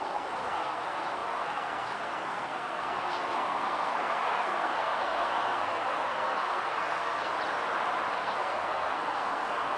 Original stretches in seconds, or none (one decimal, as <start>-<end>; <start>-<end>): 7.3-8.1